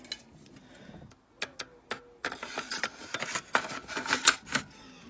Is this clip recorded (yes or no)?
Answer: yes